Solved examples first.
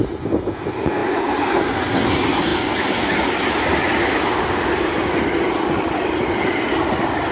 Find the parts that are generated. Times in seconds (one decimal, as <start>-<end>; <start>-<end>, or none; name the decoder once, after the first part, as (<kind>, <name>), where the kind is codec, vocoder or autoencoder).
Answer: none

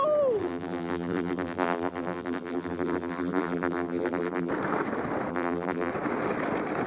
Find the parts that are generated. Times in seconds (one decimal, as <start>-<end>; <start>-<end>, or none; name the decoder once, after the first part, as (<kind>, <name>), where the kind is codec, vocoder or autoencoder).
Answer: 0.4-4.5 (vocoder, BigVGAN v2); 5.3-5.9

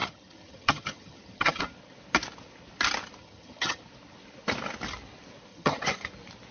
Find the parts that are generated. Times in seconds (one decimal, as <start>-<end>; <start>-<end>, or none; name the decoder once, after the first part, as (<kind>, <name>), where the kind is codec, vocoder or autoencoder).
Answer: 0.0-1.6 (vocoder, HiFi-GAN); 3.2-3.8; 5.5-6.1

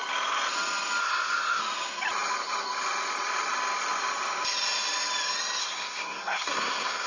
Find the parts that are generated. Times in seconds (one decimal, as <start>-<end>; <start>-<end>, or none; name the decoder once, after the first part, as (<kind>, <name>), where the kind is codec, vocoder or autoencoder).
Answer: 1.0-1.6 (codec, SNAC); 5.6-7.1

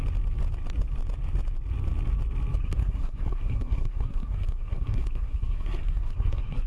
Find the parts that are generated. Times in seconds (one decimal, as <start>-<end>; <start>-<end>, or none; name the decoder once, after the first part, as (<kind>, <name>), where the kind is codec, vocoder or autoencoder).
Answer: 2.6-6.7 (codec, SNAC)